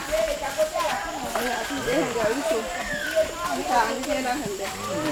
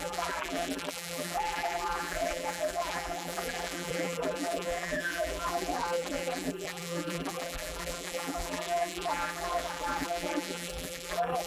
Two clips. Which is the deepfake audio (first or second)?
second